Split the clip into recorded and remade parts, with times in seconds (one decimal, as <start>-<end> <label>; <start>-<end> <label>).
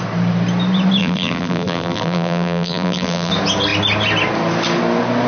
0.0-1.0 recorded; 1.0-3.3 remade; 3.3-5.3 recorded